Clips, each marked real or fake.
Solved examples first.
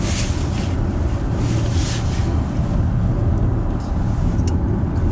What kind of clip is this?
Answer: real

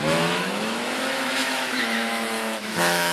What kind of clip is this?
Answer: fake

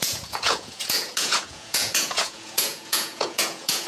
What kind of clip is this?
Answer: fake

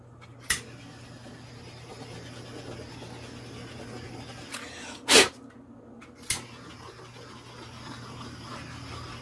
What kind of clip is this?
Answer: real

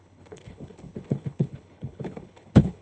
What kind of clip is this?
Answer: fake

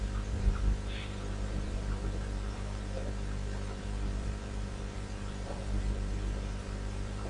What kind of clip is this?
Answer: fake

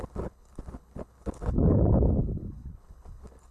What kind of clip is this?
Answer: fake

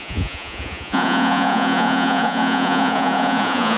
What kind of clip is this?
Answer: fake